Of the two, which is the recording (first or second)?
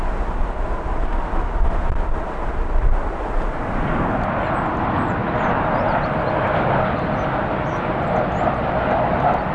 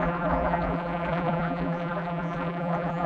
first